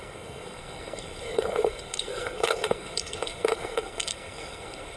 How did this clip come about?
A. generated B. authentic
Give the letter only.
A